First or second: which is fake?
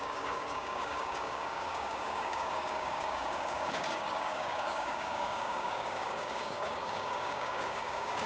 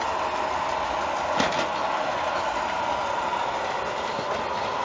first